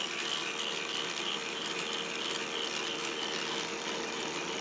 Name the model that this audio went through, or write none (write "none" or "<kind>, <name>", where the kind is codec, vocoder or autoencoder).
none